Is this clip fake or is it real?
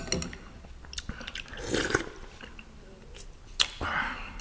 real